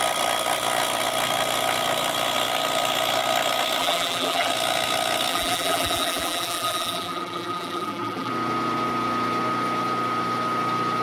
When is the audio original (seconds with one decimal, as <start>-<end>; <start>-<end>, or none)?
0.0-3.8; 4.5-5.3; 8.3-11.0